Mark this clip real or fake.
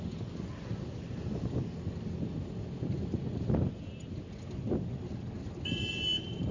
real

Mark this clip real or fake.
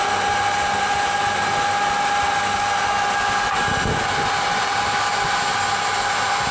real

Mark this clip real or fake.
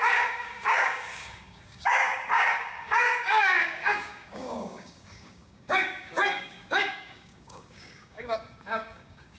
fake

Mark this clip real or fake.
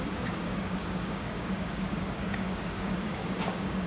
fake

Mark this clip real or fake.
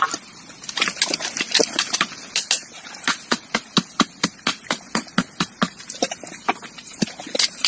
real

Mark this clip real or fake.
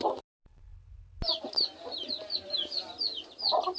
real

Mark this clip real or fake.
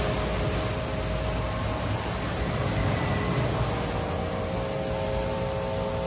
real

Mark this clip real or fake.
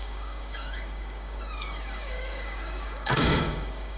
fake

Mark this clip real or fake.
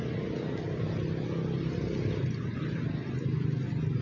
real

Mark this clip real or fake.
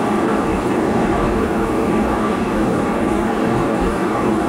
fake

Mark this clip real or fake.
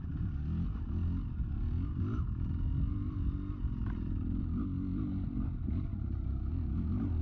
real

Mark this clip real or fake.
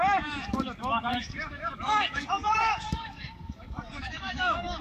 fake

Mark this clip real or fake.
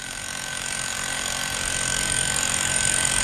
fake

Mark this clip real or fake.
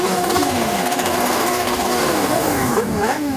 fake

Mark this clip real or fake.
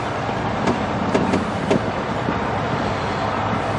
real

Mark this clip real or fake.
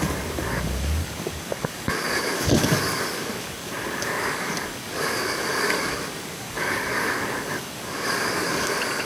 fake